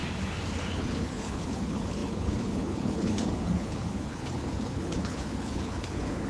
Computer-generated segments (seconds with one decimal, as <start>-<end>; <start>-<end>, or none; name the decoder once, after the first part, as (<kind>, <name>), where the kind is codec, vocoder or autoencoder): 0.7-6.3 (codec, HILCodec)